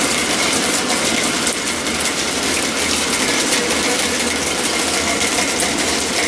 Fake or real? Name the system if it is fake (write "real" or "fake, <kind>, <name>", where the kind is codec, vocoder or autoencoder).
real